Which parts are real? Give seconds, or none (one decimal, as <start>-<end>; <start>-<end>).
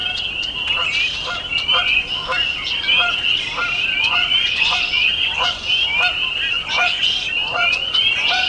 0.0-1.8; 2.2-4.0; 5.9-6.5